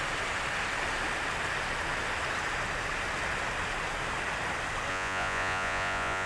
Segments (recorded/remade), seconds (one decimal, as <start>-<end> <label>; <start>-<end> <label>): 0.0-4.9 recorded; 4.9-6.3 remade